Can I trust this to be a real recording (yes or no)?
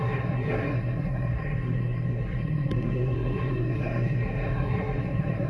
no